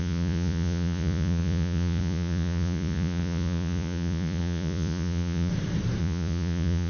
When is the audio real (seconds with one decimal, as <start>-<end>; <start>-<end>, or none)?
5.5-6.0